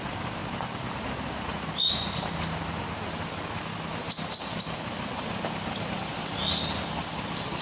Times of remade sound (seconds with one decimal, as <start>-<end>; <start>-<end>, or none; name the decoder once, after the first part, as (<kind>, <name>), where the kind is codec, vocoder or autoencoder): none